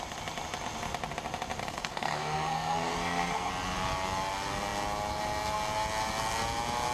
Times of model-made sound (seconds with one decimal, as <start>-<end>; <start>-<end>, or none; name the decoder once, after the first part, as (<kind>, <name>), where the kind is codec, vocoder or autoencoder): 1.6-3.5 (codec, SNAC)